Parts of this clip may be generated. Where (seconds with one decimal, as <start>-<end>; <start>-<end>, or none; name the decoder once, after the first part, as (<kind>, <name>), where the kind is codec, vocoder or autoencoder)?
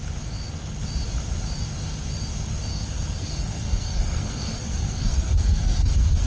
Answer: 2.7-6.3 (codec, SNAC)